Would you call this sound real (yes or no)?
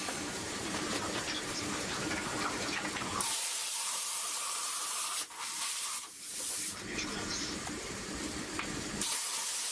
no